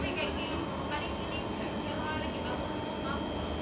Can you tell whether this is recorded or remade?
recorded